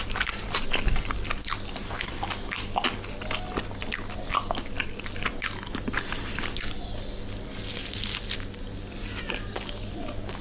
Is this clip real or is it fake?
real